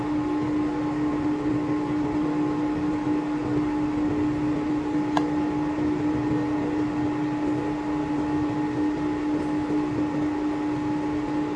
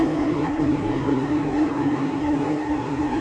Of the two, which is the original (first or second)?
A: first